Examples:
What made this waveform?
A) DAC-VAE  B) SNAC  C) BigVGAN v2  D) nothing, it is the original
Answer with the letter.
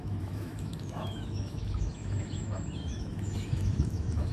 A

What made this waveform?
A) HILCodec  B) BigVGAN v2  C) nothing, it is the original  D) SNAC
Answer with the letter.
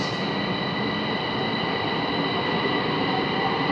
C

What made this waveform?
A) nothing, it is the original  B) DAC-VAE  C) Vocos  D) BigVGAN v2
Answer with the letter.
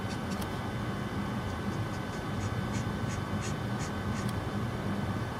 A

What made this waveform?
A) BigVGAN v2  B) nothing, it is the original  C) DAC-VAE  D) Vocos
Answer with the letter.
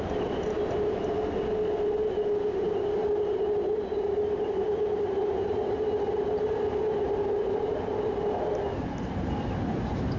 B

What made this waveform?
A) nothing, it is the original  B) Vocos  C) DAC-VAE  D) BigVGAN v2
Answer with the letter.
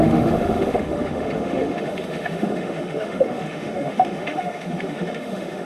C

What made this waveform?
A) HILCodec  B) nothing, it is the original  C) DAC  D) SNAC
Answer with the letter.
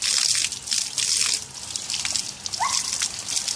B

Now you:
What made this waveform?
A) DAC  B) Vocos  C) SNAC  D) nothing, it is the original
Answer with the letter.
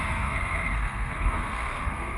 C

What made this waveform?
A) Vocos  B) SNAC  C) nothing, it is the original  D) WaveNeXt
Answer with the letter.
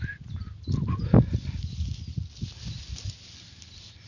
C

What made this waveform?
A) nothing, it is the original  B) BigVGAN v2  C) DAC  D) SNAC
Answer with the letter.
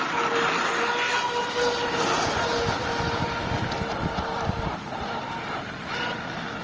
A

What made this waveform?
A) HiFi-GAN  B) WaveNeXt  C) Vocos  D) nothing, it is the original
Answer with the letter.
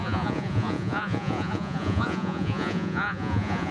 C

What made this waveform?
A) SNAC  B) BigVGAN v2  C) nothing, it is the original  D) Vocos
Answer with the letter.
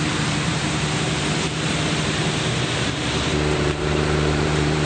B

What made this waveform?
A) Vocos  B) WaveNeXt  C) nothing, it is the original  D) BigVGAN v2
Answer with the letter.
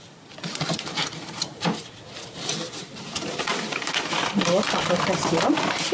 D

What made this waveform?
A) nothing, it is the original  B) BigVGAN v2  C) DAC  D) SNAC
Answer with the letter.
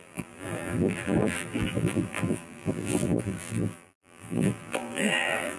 B